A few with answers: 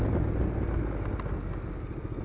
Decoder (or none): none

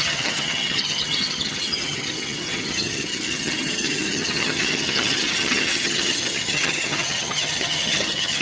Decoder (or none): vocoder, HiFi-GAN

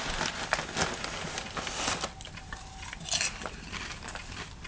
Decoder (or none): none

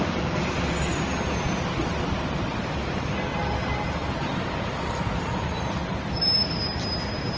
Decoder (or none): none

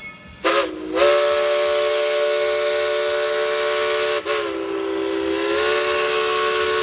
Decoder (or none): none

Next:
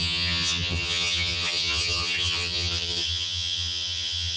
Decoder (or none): vocoder, HiFi-GAN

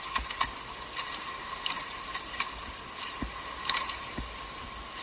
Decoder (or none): none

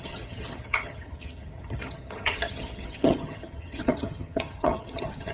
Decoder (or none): vocoder, HiFi-GAN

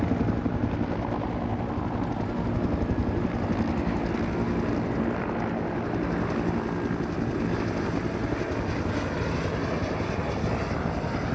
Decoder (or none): none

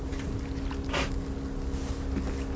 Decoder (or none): none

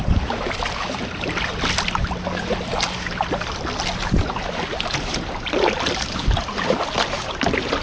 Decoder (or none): none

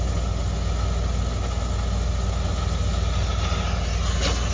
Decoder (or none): none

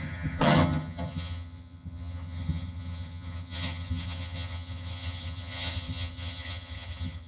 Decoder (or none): vocoder, HiFi-GAN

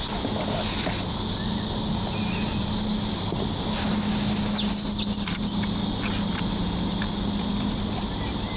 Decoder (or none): none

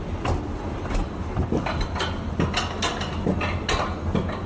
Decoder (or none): none